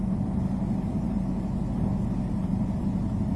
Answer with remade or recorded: recorded